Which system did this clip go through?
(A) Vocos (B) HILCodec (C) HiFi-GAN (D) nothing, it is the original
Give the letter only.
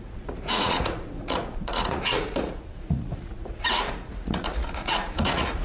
A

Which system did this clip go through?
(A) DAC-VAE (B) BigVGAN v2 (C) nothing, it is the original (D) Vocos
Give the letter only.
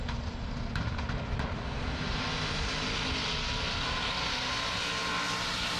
C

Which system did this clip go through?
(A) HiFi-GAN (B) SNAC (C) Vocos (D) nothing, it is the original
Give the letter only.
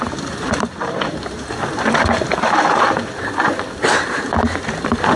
D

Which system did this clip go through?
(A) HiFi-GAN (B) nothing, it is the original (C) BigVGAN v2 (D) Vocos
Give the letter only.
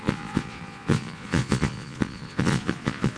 D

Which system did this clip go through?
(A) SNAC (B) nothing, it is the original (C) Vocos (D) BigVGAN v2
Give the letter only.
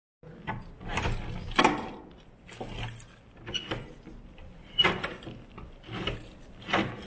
B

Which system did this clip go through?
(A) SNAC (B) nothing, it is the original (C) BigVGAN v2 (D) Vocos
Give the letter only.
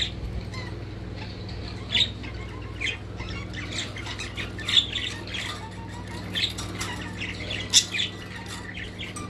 B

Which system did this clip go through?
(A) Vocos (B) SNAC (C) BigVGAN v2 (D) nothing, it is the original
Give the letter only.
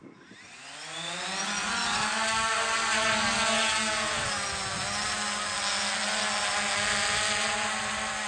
D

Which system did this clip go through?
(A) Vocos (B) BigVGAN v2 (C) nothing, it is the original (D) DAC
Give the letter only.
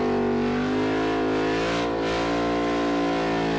C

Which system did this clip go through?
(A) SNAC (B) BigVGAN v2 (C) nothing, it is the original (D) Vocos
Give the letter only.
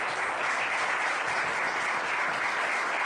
C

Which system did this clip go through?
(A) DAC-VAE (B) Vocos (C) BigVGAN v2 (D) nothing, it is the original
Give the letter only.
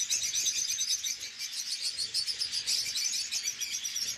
B